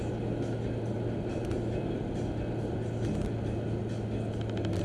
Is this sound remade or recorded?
recorded